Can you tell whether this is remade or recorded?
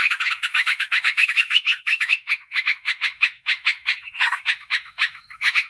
remade